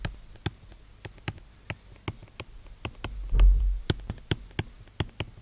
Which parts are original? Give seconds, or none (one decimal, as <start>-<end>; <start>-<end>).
0.0-5.4